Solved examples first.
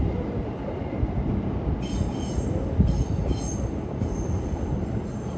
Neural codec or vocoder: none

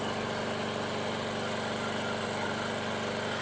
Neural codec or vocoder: none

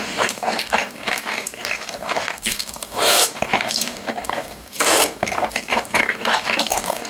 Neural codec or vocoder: codec, DAC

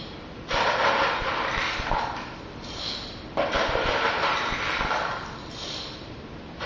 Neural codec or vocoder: none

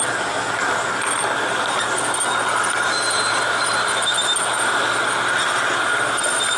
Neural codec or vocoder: none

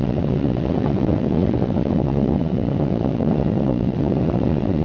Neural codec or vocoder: vocoder, WaveNeXt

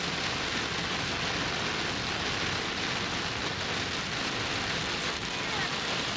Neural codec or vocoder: none